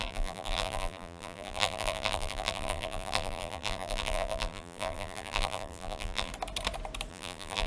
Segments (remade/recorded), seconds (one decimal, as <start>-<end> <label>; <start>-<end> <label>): 0.0-6.3 remade; 6.3-7.1 recorded; 7.1-7.7 remade